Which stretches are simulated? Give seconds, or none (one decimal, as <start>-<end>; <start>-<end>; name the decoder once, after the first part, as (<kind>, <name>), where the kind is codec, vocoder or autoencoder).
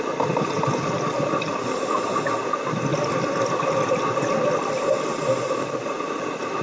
none